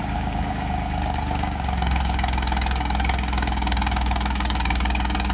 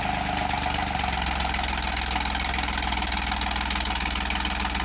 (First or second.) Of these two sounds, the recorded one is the second